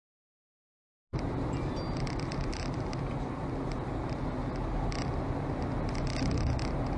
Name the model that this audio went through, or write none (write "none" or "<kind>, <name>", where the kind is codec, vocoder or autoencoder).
none